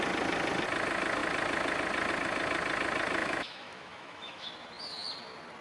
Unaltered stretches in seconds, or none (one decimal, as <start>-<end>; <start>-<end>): 0.0-3.2; 4.5-5.6